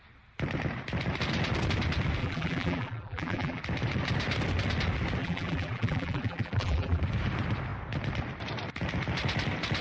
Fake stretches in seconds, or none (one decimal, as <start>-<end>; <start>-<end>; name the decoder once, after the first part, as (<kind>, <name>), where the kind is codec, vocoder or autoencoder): 2.2-3.6 (vocoder, BigVGAN v2); 5.2-7.0